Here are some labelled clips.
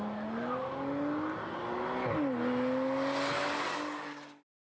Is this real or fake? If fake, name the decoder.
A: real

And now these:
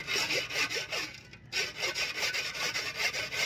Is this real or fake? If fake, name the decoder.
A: real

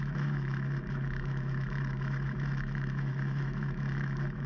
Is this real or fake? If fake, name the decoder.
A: fake, autoencoder, DAC-VAE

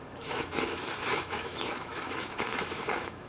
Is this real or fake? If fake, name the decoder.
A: fake, autoencoder, DAC-VAE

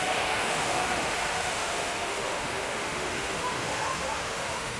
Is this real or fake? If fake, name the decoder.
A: fake, autoencoder, DAC-VAE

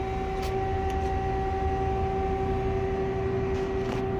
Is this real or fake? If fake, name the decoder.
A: real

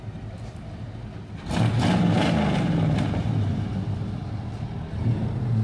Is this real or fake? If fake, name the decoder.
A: real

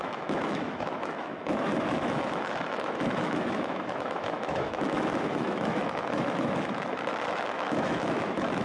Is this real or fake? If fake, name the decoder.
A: fake, autoencoder, DAC-VAE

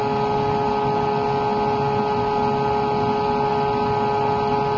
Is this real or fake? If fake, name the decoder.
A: real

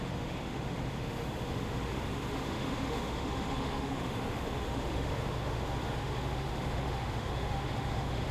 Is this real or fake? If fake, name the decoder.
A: fake, autoencoder, DAC-VAE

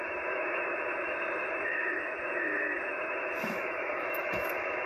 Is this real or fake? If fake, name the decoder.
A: fake, autoencoder, DAC-VAE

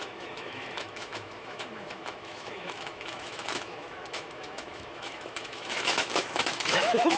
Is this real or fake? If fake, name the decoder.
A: fake, autoencoder, DAC-VAE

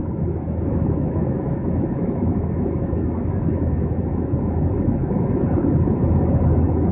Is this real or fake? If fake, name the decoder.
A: fake, autoencoder, DAC-VAE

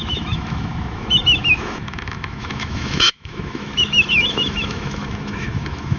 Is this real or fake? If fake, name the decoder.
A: fake, autoencoder, DAC-VAE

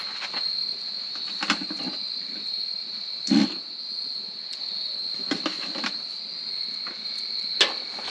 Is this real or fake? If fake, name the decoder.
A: real